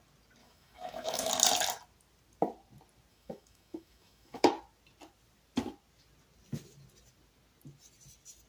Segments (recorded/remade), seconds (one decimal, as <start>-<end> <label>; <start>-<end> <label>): 0.0-0.4 recorded; 0.4-1.3 remade; 1.3-3.1 recorded; 3.1-4.5 remade; 4.5-8.5 recorded